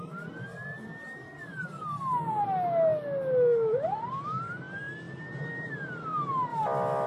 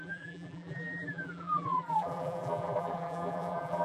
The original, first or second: first